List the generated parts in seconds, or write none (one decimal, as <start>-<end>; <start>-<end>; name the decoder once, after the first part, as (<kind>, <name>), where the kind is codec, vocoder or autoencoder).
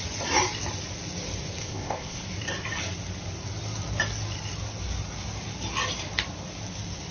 1.6-2.2 (codec, ZipCodec)